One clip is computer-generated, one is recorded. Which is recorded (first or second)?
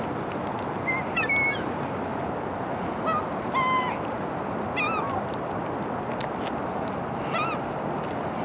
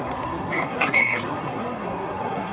first